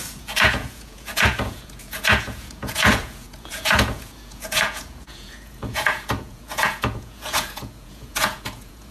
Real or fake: fake